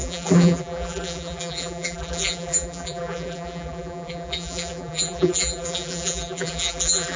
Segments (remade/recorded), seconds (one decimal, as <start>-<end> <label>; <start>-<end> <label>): 0.0-7.2 remade